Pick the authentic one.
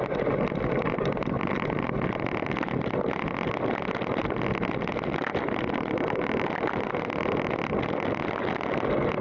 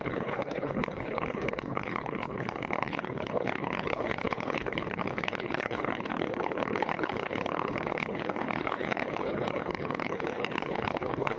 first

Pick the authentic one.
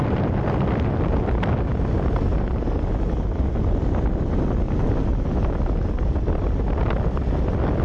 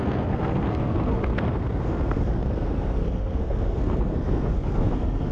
first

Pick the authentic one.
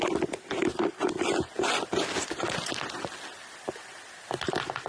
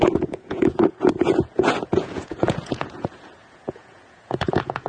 first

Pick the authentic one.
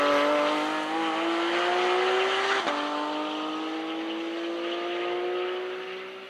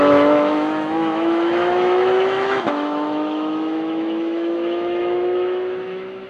first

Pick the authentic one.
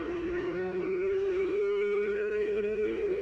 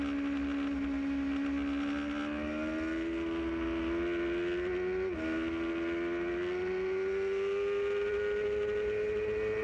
second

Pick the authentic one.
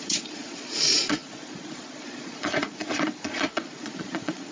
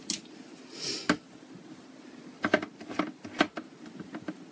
second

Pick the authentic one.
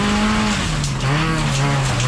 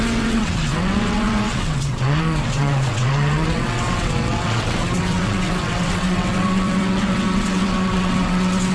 first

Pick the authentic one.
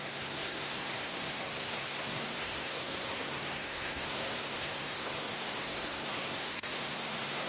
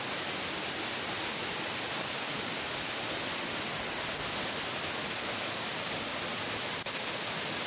second